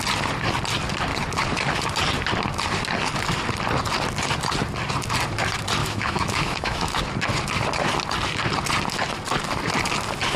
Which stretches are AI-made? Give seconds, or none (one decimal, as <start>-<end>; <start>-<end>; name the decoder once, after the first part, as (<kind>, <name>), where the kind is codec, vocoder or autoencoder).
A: 5.8-7.0 (autoencoder, DAC-VAE)